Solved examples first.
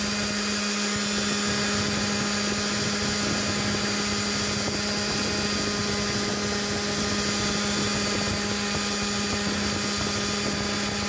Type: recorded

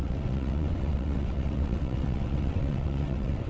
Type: remade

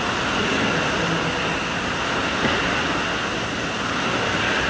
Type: recorded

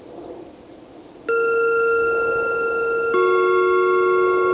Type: recorded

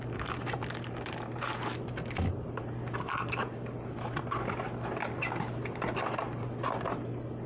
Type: recorded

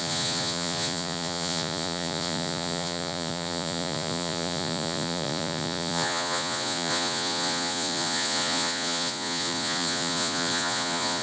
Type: remade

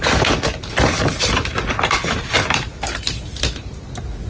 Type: recorded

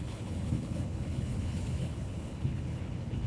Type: remade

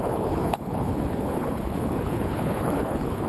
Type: remade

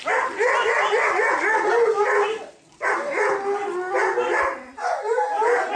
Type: recorded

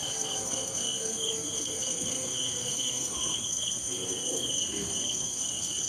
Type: remade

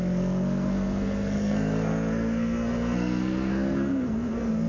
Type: remade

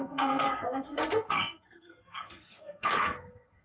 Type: remade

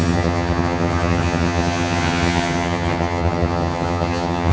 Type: remade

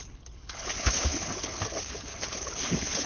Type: remade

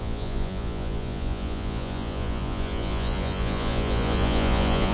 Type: remade